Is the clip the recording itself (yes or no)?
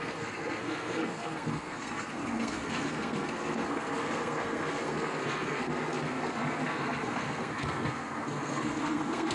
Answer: no